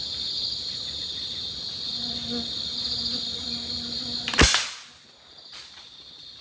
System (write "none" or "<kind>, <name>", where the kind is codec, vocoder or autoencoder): none